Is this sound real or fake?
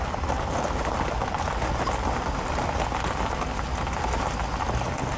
real